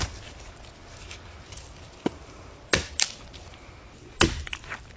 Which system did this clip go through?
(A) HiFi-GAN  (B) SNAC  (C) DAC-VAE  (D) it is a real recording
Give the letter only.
D